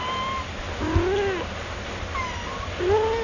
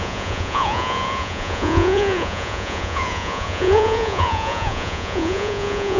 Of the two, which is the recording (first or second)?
first